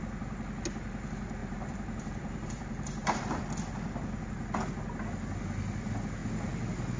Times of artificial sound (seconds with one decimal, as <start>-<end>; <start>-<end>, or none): 1.4-3.4